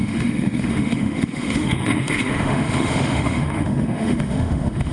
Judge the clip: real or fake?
fake